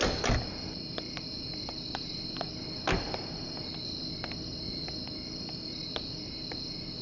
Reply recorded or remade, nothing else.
recorded